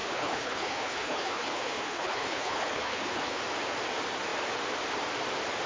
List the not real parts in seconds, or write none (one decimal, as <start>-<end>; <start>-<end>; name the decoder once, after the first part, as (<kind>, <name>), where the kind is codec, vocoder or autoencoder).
0.0-3.4 (codec, HILCodec)